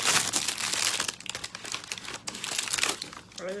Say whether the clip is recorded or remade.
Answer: recorded